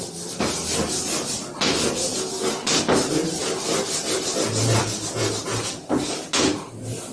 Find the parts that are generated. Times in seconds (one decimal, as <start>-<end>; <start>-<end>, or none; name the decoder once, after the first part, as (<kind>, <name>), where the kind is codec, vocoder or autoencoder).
none